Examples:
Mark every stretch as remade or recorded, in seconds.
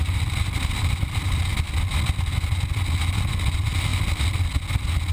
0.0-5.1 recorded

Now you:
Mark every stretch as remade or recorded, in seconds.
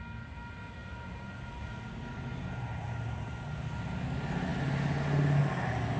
0.0-0.8 recorded; 0.8-3.3 remade; 3.3-6.0 recorded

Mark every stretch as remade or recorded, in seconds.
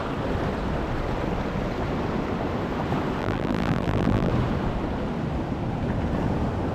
0.0-3.2 recorded; 3.2-4.3 remade; 4.3-6.7 recorded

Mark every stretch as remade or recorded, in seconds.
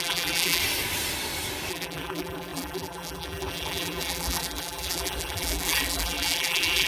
0.0-0.6 remade; 0.6-1.7 recorded; 1.7-6.9 remade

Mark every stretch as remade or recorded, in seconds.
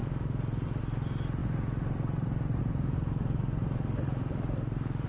0.0-0.8 remade; 0.8-1.4 recorded; 1.4-2.6 remade; 2.6-5.1 recorded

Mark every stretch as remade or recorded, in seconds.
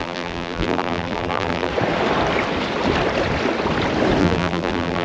0.0-1.7 remade; 1.7-4.2 recorded; 4.2-5.0 remade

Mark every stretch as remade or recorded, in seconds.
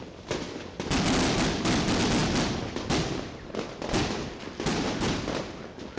0.0-4.7 recorded; 4.7-5.2 remade; 5.2-6.0 recorded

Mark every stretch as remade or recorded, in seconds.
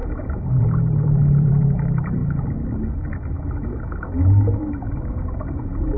0.0-2.2 remade; 2.2-4.2 recorded; 4.2-6.0 remade